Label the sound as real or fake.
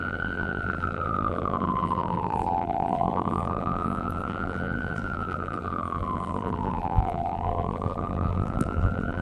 fake